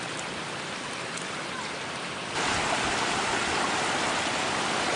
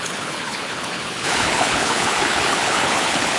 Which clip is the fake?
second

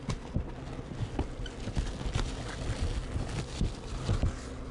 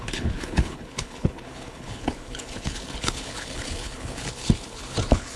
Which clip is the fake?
second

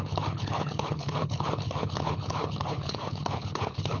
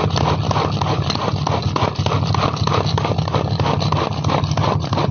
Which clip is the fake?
first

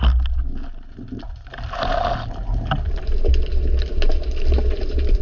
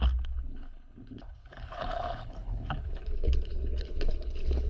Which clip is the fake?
second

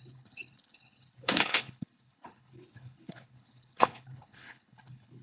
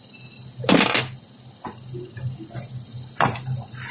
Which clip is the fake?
first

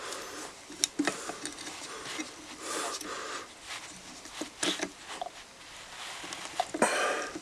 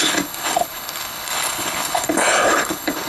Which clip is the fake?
second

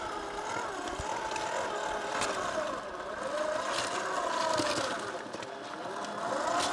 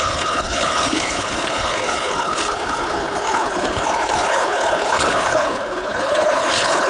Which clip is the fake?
second